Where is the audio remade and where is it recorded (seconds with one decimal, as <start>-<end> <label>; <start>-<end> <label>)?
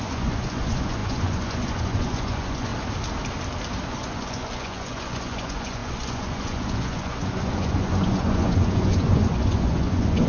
0.0-2.7 remade; 2.7-3.9 recorded; 3.9-10.3 remade